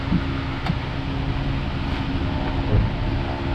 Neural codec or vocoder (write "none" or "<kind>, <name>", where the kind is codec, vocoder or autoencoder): none